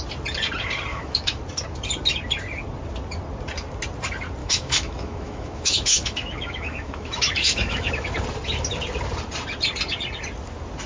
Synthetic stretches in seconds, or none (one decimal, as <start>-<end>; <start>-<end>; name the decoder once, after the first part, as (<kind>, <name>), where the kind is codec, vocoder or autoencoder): 0.9-1.4 (autoencoder, DAC-VAE); 4.4-7.9